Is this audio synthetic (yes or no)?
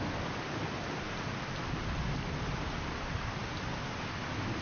yes